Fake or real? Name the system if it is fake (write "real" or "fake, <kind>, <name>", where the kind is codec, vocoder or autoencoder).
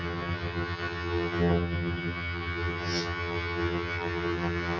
fake, vocoder, HiFi-GAN